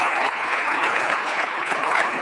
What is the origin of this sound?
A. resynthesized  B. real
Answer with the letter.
A